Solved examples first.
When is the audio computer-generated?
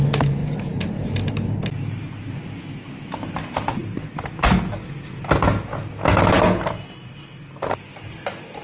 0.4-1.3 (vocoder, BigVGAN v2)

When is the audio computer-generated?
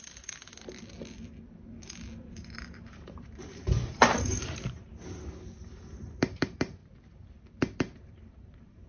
0.0-0.5 (vocoder, BigVGAN v2); 2.2-4.9; 5.6-6.8; 8.0-8.9